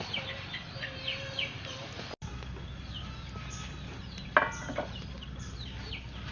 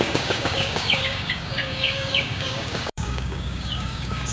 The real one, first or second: first